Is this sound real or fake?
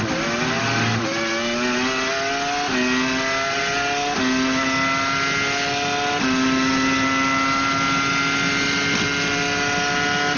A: real